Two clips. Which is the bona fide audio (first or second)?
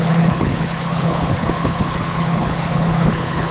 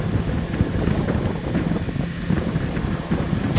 second